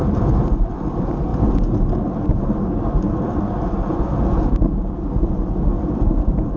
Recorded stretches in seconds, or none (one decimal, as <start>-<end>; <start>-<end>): 0.0-6.6